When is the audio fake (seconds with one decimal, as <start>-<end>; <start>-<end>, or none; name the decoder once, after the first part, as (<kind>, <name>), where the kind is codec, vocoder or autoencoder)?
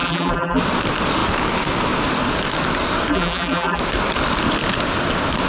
0.0-0.6 (vocoder, BigVGAN v2); 3.1-3.8